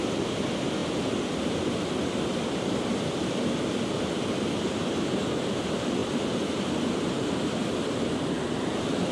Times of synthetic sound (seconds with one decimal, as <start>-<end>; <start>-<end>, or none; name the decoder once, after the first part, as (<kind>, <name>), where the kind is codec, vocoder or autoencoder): 0.0-0.8 (vocoder, BigVGAN v2); 1.4-9.1